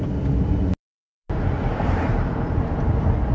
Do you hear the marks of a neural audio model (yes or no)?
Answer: no